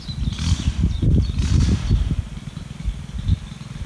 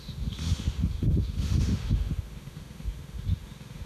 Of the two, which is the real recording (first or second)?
first